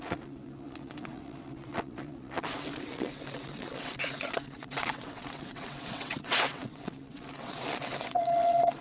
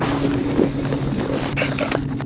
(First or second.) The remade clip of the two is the first